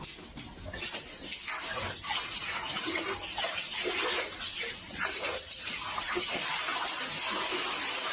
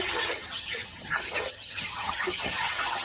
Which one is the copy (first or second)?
second